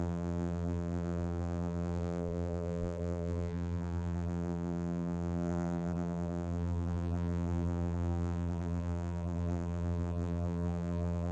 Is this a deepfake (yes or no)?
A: yes